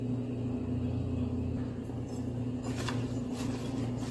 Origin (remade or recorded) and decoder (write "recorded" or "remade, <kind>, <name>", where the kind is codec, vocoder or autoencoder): recorded